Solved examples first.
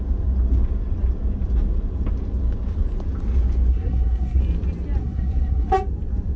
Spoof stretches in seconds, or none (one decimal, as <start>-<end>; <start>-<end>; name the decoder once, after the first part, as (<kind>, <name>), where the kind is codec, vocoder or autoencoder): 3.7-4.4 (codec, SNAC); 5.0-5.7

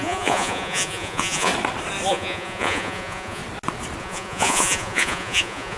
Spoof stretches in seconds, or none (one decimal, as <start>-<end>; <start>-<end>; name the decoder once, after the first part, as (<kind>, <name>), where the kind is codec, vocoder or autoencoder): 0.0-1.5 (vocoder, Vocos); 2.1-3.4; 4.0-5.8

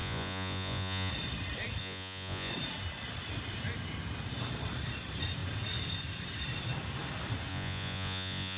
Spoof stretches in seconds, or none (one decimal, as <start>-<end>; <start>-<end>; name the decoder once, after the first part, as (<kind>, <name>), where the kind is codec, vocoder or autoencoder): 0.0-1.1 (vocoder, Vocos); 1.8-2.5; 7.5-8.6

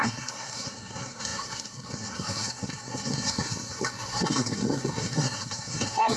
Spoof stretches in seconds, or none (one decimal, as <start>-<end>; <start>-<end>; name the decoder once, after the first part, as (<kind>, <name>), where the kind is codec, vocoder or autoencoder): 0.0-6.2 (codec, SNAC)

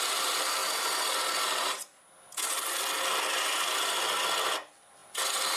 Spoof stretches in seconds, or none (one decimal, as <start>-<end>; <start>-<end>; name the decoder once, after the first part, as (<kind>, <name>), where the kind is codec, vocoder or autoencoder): none